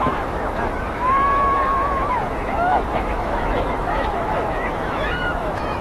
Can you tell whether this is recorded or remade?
remade